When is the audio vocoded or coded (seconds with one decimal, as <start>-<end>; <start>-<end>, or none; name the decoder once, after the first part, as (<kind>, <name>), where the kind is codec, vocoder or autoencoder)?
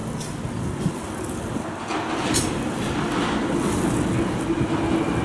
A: none